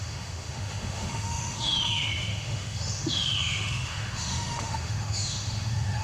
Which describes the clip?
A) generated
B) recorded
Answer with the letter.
A